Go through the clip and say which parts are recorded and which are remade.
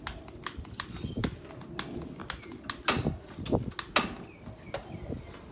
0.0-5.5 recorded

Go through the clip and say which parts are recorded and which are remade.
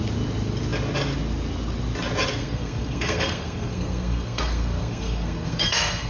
0.0-2.4 recorded; 2.4-6.1 remade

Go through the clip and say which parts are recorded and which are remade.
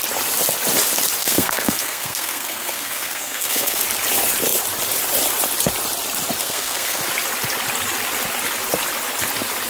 0.0-1.2 recorded; 1.2-3.8 remade; 3.8-6.4 recorded; 6.4-7.0 remade; 7.0-9.7 recorded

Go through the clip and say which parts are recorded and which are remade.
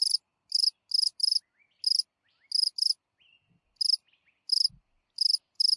0.0-5.8 recorded